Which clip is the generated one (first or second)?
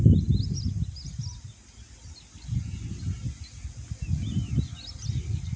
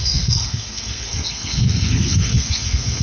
second